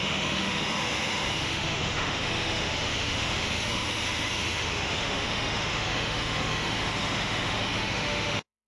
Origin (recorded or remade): remade